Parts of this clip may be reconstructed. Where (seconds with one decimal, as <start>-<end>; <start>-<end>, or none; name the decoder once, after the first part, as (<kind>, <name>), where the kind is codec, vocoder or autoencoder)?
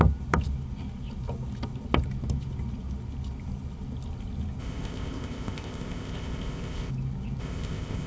4.6-6.9 (codec, ZipCodec); 7.4-8.1